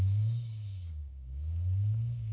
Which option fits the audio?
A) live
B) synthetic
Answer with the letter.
B